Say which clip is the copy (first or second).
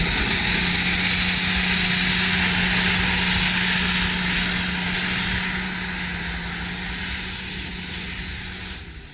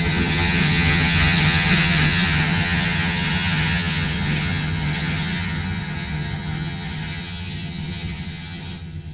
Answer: second